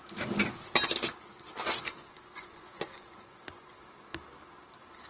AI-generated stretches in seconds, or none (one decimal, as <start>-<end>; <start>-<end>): 2.0-3.8